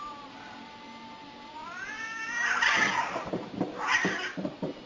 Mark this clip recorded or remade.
remade